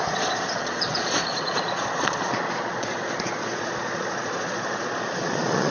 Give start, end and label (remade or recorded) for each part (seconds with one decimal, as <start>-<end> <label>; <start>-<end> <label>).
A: 0.0-5.7 remade